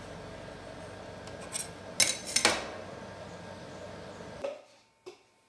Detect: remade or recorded recorded